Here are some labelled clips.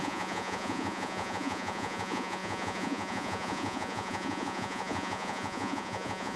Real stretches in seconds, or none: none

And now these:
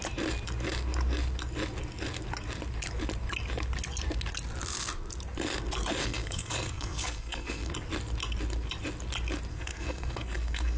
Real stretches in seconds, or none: 0.0-6.0; 7.7-9.5

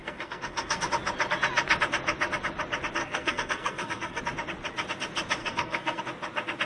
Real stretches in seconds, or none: 0.9-3.0; 4.2-5.4; 6.0-6.7

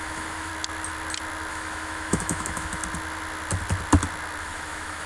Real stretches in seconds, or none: 0.5-1.5; 2.8-4.4

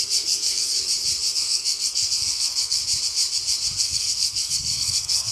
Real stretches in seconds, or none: 0.7-1.3; 2.8-3.8

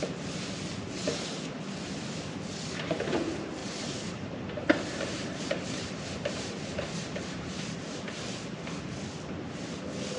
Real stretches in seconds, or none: 0.0-3.6; 7.5-10.2

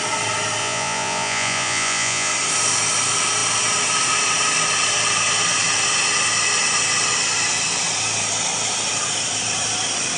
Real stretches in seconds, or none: 0.0-0.6; 2.3-10.2